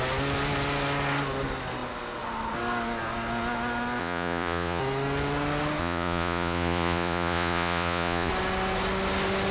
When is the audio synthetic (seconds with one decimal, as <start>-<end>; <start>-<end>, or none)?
4.0-4.8; 5.8-8.3